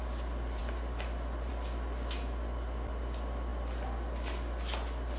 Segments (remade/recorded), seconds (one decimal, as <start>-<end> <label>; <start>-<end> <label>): 0.0-5.2 recorded